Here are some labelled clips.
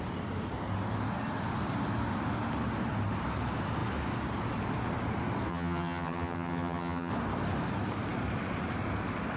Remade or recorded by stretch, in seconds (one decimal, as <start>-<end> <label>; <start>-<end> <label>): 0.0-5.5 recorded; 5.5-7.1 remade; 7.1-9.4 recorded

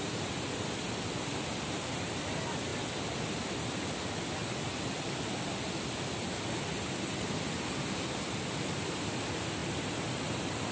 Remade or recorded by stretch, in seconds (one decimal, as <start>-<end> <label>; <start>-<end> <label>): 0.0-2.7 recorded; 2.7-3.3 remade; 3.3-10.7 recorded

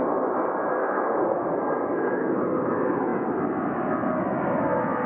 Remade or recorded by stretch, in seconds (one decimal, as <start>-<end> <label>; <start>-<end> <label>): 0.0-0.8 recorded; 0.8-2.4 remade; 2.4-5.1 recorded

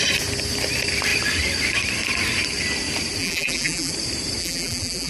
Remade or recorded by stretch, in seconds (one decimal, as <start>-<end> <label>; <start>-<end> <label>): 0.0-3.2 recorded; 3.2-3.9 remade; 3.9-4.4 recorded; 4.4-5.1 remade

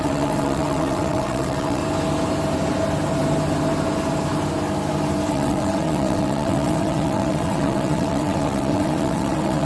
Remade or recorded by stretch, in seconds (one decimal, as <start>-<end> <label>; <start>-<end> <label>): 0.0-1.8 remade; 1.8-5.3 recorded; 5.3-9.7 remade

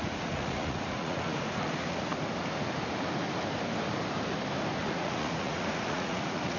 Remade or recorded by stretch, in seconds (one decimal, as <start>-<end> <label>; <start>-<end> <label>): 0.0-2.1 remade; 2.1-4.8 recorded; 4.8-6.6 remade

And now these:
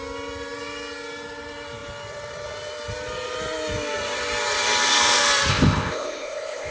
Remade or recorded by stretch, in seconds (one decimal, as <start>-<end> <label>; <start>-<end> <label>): 0.0-5.5 recorded; 5.5-6.7 remade